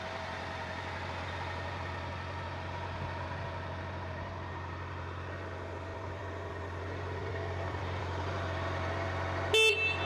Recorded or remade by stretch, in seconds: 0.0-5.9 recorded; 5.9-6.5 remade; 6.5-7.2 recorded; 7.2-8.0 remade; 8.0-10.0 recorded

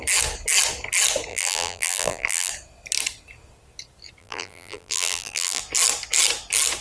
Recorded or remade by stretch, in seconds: 0.0-1.3 recorded; 1.3-2.5 remade; 2.5-4.2 recorded; 4.2-5.6 remade; 5.6-6.8 recorded